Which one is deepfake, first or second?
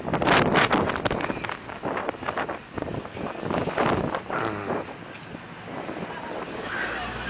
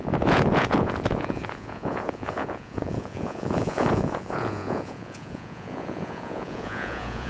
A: second